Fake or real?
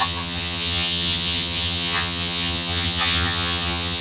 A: fake